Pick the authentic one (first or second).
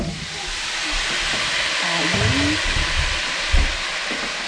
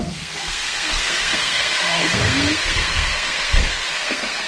first